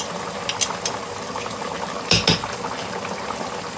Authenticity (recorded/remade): recorded